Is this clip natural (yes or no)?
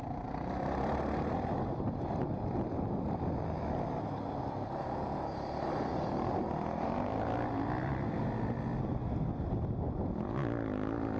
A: yes